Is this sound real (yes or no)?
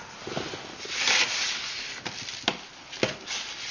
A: yes